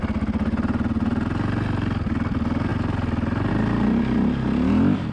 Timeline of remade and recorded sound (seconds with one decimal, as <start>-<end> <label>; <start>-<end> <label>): 0.0-5.1 recorded